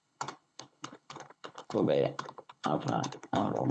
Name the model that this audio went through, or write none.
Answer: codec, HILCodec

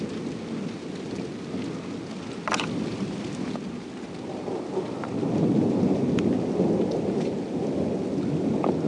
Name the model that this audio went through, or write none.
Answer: none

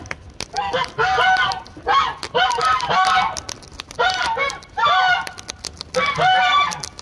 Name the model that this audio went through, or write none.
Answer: none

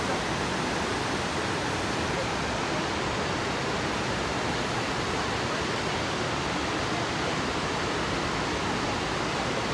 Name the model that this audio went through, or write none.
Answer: none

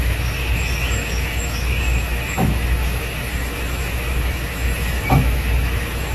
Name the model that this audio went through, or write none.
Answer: autoencoder, DAC-VAE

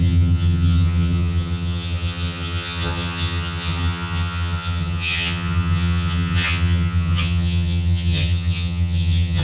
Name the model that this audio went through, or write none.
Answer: vocoder, HiFi-GAN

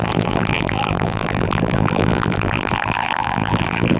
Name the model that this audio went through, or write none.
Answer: vocoder, BigVGAN v2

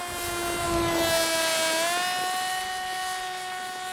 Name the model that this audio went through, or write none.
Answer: none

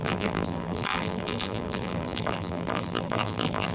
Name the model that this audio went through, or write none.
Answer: vocoder, BigVGAN v2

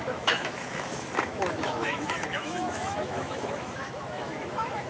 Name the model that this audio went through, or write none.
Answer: autoencoder, DAC-VAE